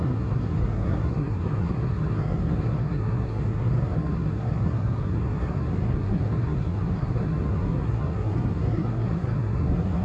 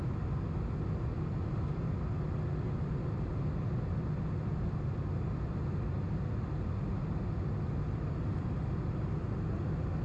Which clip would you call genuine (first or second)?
second